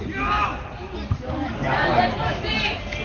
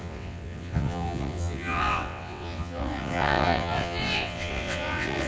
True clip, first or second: first